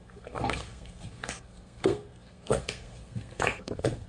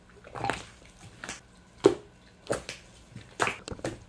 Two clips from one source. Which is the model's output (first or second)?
first